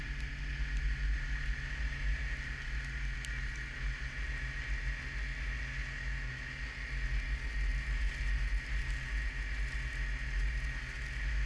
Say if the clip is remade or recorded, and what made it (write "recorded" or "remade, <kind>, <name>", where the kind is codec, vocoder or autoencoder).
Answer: recorded